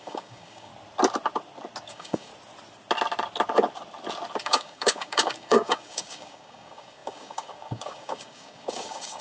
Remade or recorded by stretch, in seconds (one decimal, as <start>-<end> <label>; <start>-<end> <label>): 0.0-0.7 remade; 0.7-1.9 recorded; 1.9-2.3 remade; 2.3-4.4 recorded; 4.4-9.2 remade